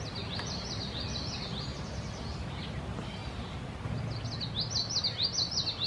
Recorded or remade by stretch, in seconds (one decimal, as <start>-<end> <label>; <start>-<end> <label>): 0.0-1.7 recorded; 1.7-2.4 remade; 2.4-5.9 recorded